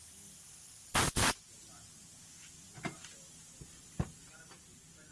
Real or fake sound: real